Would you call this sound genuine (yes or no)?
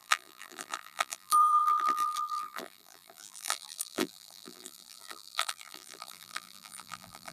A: no